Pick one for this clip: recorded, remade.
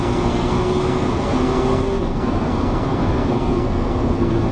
remade